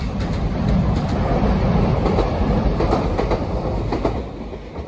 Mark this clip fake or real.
fake